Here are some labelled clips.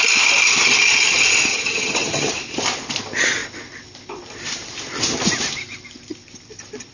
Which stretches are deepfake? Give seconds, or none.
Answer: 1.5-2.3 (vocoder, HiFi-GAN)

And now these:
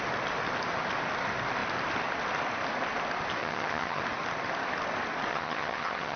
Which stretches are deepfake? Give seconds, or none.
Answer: 3.4-4.0 (vocoder, HiFi-GAN); 5.3-6.2

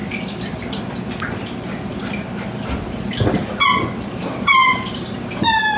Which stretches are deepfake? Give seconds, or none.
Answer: none

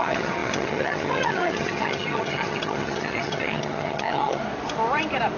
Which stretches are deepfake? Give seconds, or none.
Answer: 0.0-4.4 (vocoder, HiFi-GAN)

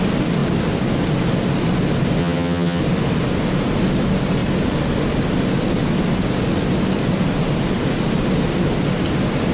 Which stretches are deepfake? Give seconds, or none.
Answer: 2.2-2.8 (vocoder, HiFi-GAN)

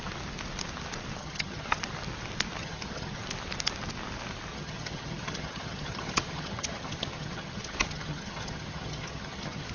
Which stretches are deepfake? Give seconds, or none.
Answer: 1.2-1.8 (vocoder, HiFi-GAN); 2.6-3.2; 4.5-9.7

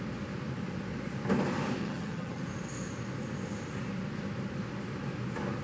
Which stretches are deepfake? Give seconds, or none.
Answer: 1.8-2.4 (vocoder, HiFi-GAN)

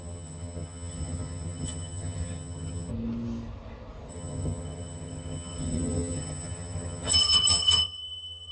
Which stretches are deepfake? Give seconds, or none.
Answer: 0.0-2.9 (vocoder, HiFi-GAN); 4.1-8.5